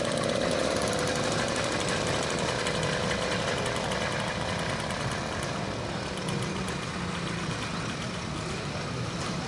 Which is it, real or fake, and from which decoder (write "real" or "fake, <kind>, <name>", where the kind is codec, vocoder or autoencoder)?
real